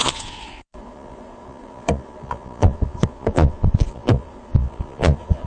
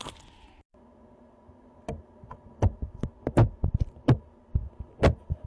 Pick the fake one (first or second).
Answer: first